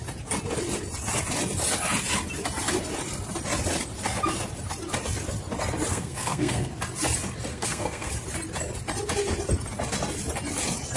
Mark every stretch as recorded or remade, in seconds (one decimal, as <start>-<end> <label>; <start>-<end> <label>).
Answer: 0.0-5.9 recorded; 5.9-6.7 remade; 6.7-7.5 recorded; 7.5-8.1 remade; 8.1-11.0 recorded